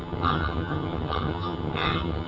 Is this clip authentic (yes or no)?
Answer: no